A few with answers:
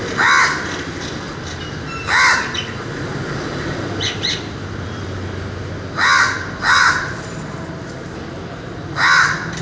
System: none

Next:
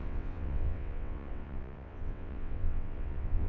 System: vocoder, WaveNeXt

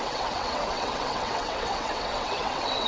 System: vocoder, WaveNeXt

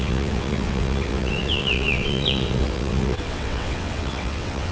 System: vocoder, WaveNeXt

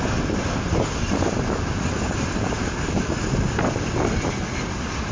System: none